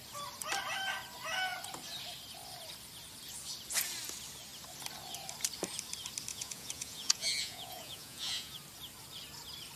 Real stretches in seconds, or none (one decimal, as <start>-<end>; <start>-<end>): 0.0-6.3; 8.6-9.8